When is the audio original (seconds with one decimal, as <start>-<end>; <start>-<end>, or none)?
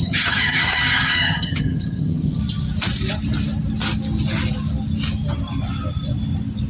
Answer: 2.4-6.7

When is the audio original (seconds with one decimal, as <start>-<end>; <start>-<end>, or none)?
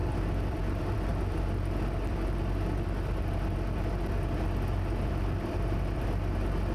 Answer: 1.1-5.1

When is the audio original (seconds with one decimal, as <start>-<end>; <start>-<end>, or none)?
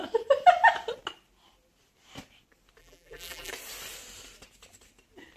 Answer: 0.0-2.8; 3.5-5.4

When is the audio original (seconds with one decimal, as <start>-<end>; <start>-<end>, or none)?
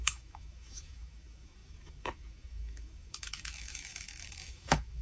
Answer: none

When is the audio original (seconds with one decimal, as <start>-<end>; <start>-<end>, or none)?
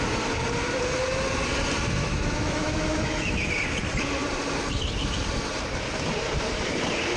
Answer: 0.0-2.0; 3.5-7.2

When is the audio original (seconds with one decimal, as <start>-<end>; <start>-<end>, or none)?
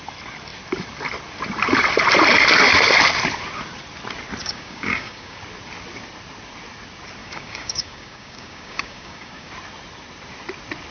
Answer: 0.0-4.4; 5.4-7.2; 9.5-10.9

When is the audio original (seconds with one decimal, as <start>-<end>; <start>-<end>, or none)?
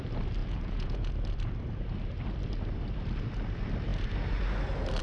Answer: 0.0-0.4; 1.1-5.0